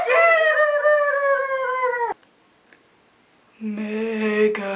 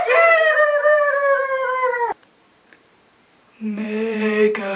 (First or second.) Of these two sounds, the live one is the first